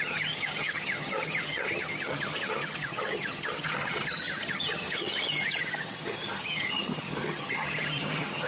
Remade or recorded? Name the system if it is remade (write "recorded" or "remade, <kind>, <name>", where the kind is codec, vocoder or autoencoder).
remade, vocoder, HiFi-GAN